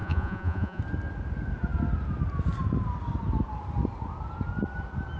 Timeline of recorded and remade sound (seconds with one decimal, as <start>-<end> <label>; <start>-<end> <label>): 0.0-0.8 remade; 0.8-5.2 recorded